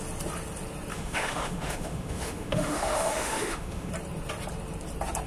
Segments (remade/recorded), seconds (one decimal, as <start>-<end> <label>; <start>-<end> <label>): 0.0-0.9 recorded; 0.9-3.9 remade; 3.9-5.3 recorded